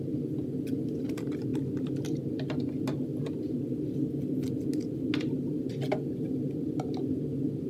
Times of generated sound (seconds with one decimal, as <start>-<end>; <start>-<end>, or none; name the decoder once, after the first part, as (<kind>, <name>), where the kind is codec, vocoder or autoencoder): none